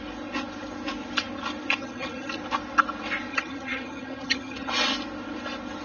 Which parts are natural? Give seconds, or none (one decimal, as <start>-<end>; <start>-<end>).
0.0-1.8; 2.3-3.3; 4.7-5.8